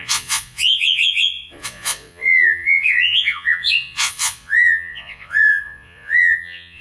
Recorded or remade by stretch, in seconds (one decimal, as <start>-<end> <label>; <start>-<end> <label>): 0.0-6.8 remade